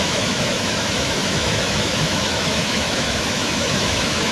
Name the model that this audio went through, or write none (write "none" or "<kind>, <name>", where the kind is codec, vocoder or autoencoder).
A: autoencoder, DAC-VAE